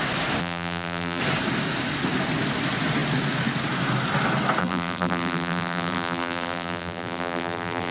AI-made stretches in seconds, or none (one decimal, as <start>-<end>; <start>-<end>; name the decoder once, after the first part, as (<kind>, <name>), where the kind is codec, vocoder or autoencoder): 0.4-1.2 (vocoder, BigVGAN v2); 4.6-7.9

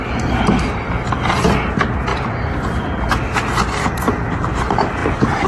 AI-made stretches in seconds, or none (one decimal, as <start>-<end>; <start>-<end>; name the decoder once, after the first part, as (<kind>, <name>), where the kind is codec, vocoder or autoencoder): 2.1-4.3 (vocoder, BigVGAN v2)

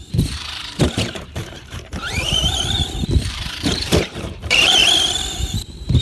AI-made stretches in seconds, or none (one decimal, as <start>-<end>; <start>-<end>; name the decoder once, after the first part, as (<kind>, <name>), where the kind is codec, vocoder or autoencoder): 0.0-4.8 (vocoder, BigVGAN v2)